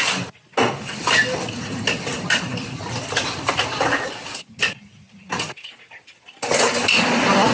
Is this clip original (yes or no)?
yes